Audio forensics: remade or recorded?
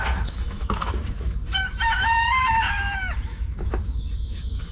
remade